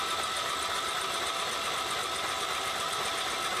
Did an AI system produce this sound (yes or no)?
no